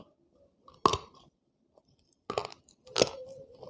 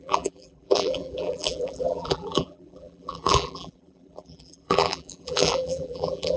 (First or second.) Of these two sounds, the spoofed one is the second